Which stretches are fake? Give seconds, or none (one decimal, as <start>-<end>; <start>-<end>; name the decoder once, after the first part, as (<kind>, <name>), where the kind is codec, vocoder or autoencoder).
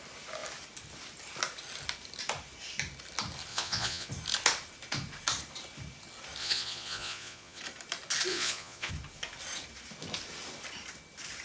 3.5-4.1 (vocoder, Vocos); 6.4-7.6; 8.3-8.9